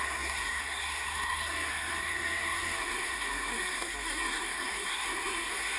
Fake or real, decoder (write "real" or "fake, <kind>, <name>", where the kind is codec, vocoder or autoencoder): fake, codec, SNAC